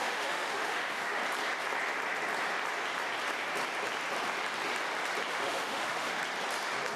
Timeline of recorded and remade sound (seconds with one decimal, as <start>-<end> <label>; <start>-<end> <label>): 0.0-1.2 remade; 1.2-5.3 recorded; 5.3-6.2 remade; 6.2-7.0 recorded